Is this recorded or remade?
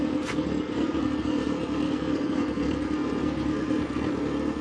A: remade